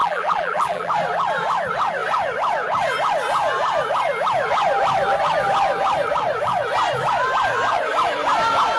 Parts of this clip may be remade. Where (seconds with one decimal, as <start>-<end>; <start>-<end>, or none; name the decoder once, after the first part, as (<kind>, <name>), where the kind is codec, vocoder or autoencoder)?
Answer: 0.0-0.9 (vocoder, BigVGAN v2)